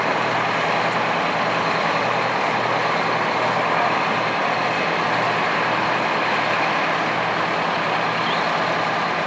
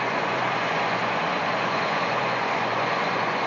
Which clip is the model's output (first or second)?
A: second